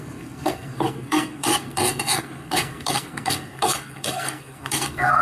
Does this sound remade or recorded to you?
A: remade